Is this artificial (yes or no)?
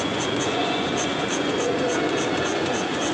yes